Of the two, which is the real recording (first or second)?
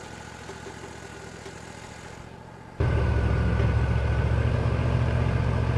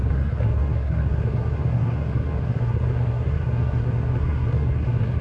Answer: first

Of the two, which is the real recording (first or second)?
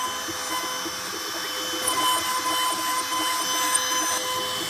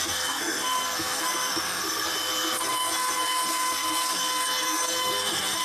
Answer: first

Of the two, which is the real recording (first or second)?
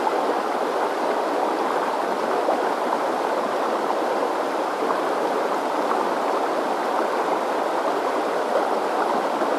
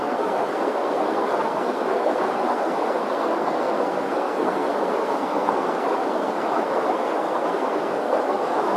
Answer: first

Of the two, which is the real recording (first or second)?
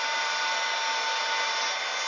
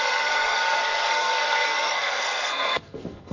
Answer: first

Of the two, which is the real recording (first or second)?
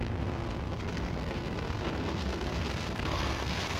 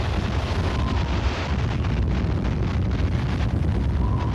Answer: second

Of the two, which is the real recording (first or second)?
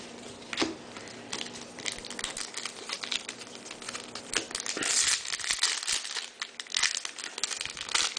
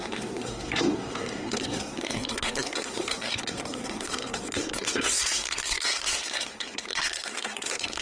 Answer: first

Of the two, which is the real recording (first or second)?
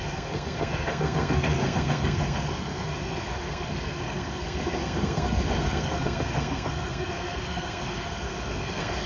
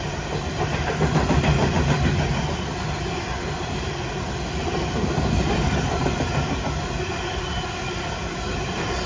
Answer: second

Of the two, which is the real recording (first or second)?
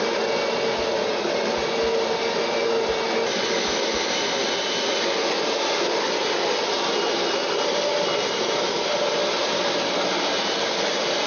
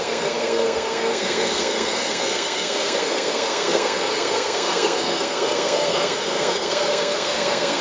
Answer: first